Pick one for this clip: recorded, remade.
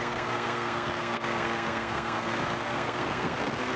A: remade